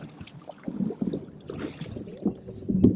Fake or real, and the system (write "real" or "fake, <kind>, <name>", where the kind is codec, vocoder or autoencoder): real